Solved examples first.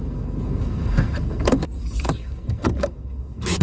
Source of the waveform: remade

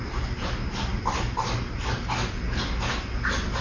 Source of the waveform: recorded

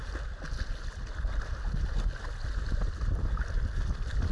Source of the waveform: recorded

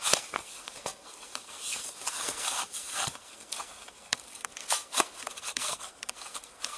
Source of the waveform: remade